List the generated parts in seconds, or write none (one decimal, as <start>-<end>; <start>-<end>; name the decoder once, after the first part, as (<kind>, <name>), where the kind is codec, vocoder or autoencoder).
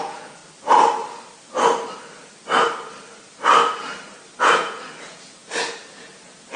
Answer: 0.0-0.4 (vocoder, Vocos); 4.4-5.4; 5.9-6.6